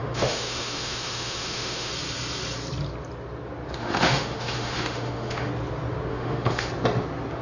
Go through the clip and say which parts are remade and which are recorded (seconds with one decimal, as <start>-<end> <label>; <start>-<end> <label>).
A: 0.0-1.9 remade; 1.9-3.8 recorded; 3.8-5.5 remade; 5.5-6.1 recorded; 6.1-6.7 remade; 6.7-7.4 recorded